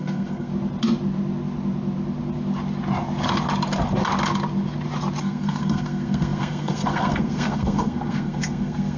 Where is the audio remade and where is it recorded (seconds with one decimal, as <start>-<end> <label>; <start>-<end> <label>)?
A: 0.0-0.5 remade; 0.5-5.2 recorded; 5.2-9.0 remade